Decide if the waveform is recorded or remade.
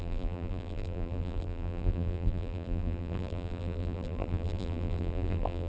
remade